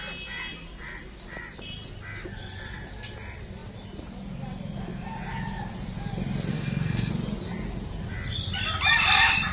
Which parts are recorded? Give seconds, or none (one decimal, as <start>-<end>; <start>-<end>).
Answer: 0.0-6.5; 7.1-9.5